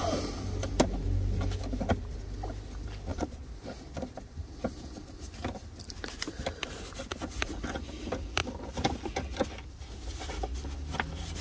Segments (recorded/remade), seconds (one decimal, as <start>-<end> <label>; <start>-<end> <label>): 0.0-3.1 recorded; 3.1-3.7 remade; 3.7-11.4 recorded